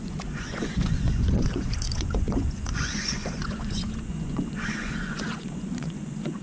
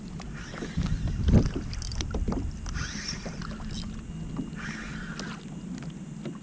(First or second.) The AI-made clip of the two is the first